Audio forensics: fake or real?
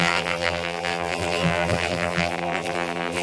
fake